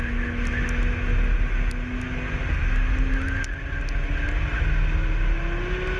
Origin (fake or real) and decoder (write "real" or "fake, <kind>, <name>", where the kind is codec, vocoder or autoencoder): real